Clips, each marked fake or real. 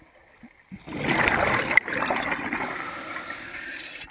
real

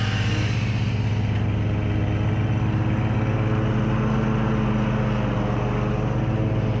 real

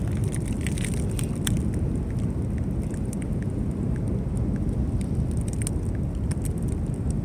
real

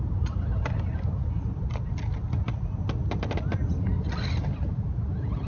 real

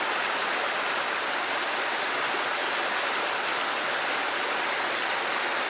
real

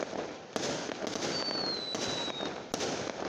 real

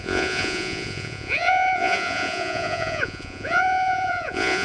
fake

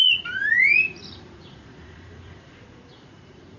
fake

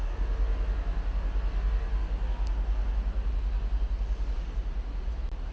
real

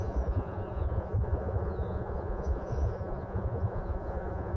fake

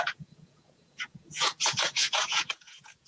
fake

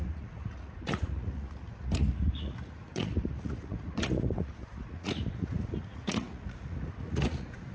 fake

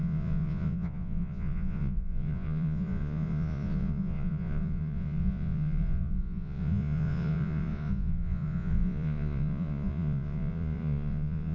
fake